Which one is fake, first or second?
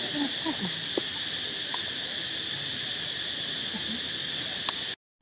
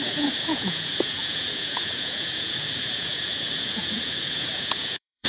second